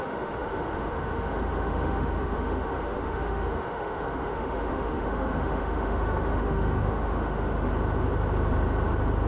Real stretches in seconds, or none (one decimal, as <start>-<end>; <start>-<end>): 7.7-9.3